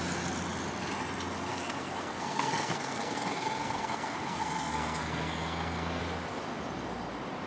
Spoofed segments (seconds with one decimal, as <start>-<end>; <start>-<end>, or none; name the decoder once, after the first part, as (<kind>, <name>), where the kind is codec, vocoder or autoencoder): 1.5-6.0 (codec, SNAC)